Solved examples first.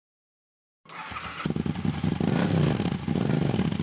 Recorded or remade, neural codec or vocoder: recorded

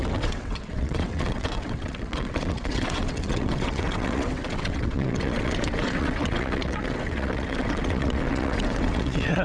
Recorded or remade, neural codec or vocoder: remade, vocoder, WaveNeXt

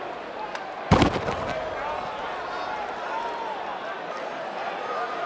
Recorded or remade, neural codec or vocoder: recorded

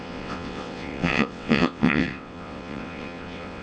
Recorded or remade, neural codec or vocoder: remade, vocoder, WaveNeXt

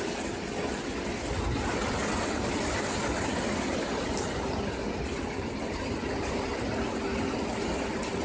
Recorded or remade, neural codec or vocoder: recorded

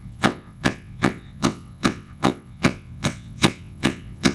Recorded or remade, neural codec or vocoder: remade, vocoder, WaveNeXt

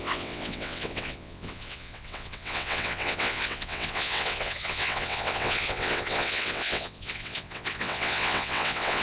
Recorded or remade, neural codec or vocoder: remade, vocoder, WaveNeXt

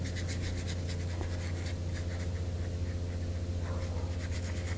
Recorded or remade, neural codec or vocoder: recorded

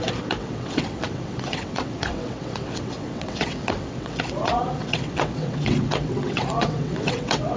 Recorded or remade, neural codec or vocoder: remade, vocoder, WaveNeXt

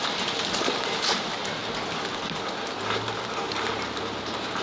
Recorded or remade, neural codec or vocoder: recorded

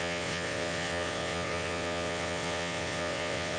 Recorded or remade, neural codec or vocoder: remade, vocoder, WaveNeXt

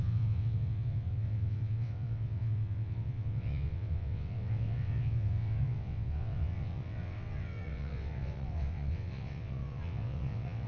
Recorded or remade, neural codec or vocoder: remade, vocoder, WaveNeXt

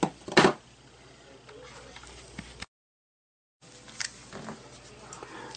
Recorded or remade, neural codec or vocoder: recorded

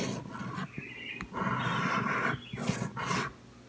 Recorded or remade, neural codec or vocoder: recorded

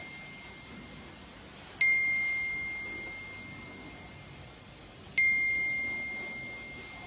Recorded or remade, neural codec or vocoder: recorded